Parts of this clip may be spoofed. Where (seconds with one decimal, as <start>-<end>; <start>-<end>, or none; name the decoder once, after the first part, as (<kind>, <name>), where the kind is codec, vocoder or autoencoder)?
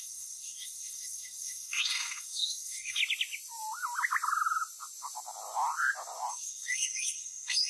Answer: 0.0-3.0 (codec, SNAC); 6.3-7.7